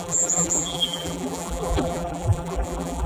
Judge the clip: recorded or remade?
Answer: remade